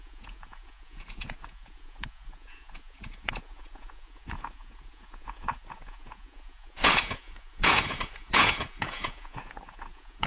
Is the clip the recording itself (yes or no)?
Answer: no